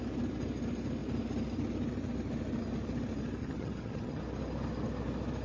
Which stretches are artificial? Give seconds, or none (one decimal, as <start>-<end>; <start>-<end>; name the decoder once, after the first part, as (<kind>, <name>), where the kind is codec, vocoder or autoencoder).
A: 3.4-4.2 (vocoder, HiFi-GAN)